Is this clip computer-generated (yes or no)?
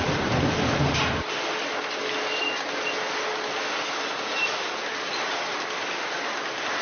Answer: no